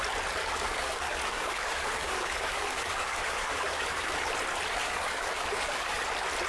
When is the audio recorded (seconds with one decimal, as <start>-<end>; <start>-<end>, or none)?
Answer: 0.0-0.4; 4.3-4.8; 6.0-6.5